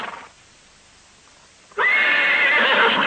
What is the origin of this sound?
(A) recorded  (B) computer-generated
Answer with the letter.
B